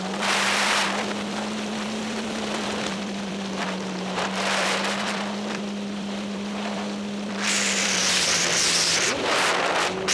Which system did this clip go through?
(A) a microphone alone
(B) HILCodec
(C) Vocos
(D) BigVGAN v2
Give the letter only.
D